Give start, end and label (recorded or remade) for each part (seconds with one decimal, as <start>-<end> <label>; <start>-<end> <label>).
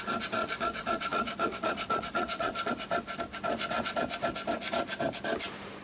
0.0-0.4 recorded; 0.4-2.7 remade; 2.7-5.8 recorded